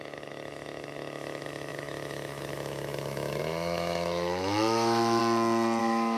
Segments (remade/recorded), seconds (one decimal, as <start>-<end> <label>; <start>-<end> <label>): 0.0-5.2 remade; 5.2-5.8 recorded; 5.8-6.2 remade